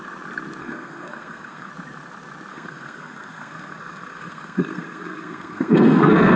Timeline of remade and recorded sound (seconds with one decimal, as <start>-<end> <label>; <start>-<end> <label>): 0.0-0.6 recorded; 0.6-1.7 remade; 1.7-2.5 recorded; 2.5-6.4 remade